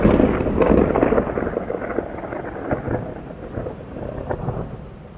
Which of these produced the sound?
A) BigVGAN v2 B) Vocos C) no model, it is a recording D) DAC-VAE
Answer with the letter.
C